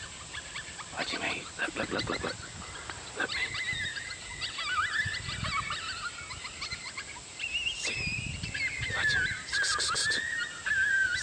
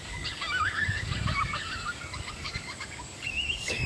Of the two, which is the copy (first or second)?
second